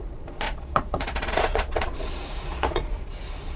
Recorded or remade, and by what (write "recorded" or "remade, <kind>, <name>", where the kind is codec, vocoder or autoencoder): remade, vocoder, Vocos